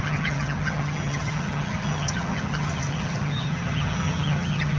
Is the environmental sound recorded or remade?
remade